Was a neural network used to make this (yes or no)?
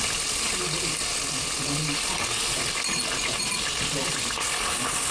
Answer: no